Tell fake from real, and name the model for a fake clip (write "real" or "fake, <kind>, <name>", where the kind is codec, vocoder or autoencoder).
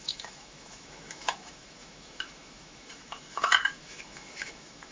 fake, autoencoder, DAC-VAE